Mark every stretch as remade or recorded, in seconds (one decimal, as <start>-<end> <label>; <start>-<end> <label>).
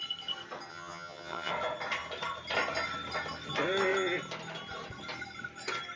0.0-0.7 recorded; 0.7-1.5 remade; 1.5-6.0 recorded